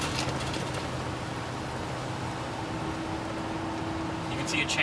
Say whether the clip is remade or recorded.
recorded